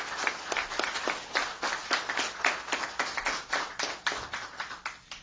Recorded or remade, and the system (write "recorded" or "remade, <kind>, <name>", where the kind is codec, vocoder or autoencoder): recorded